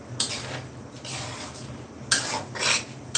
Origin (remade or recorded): recorded